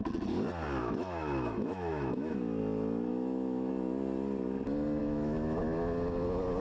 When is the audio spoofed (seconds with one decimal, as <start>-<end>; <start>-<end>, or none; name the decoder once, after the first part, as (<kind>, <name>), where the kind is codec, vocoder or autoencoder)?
0.8-2.6 (autoencoder, DAC-VAE); 3.1-3.7; 5.0-5.6

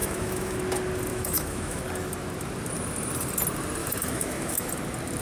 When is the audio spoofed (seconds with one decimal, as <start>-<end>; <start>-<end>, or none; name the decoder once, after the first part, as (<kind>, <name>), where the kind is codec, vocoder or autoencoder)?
0.0-0.6 (autoencoder, DAC-VAE); 1.1-1.8; 3.8-4.7

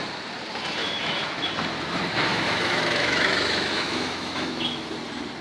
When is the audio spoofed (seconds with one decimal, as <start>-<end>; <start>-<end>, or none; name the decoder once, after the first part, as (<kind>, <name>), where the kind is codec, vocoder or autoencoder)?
0.8-1.5 (autoencoder, DAC-VAE); 2.3-4.9